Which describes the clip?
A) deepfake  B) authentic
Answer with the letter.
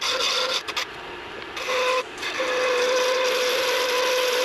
B